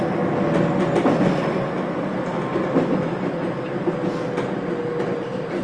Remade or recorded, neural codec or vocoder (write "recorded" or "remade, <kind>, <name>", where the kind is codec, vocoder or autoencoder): recorded